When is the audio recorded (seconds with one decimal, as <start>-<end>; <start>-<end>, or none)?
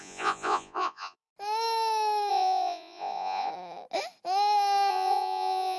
1.3-2.3; 3.5-4.9